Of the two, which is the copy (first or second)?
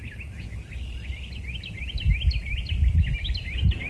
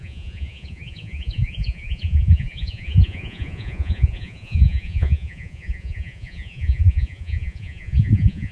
second